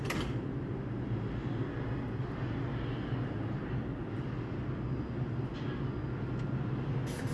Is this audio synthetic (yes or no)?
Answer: no